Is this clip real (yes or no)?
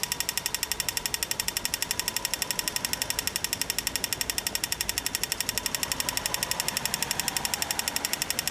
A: yes